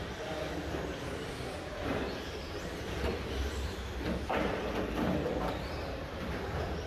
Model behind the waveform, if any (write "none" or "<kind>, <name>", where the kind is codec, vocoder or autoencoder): none